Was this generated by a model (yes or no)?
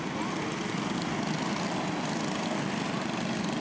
no